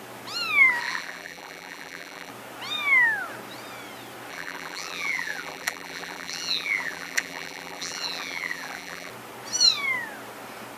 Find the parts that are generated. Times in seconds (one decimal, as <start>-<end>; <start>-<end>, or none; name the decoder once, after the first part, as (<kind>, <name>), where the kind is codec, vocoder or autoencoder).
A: 0.8-2.3 (vocoder, BigVGAN v2); 4.3-9.1